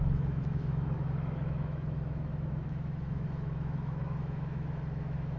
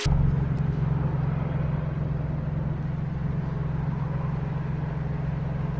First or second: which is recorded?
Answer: second